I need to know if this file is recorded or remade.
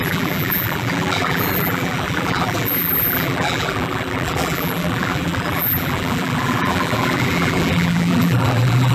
remade